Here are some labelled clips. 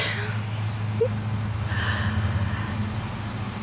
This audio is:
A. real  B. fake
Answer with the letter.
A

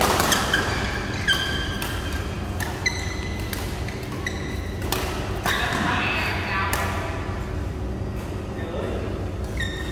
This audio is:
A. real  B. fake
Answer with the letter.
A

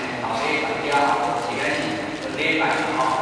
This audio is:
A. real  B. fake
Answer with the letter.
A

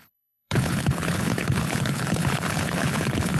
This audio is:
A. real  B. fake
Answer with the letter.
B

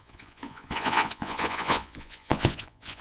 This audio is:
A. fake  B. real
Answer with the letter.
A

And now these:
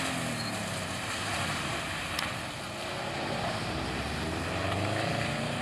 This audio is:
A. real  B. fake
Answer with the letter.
A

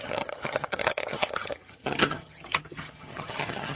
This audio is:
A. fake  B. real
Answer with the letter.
A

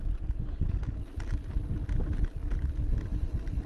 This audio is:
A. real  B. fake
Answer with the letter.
A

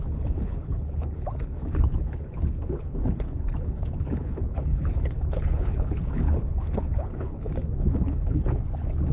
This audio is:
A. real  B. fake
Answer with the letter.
B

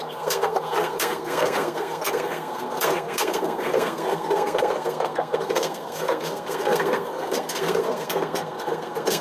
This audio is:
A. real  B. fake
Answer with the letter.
B